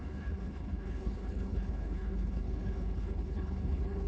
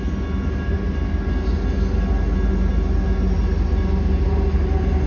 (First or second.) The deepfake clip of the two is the first